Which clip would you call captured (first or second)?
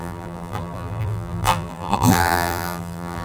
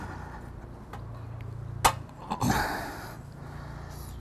second